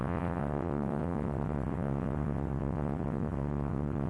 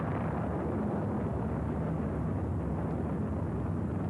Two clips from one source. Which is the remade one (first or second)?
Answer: first